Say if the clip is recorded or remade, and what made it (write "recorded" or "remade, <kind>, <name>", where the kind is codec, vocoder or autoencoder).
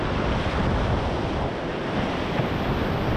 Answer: recorded